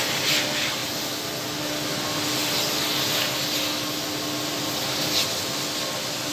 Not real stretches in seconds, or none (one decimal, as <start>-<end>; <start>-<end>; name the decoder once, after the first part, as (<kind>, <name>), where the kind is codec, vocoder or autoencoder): none